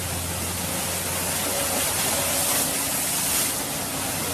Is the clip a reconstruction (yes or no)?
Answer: no